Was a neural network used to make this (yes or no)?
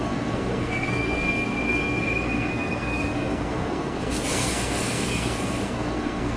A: yes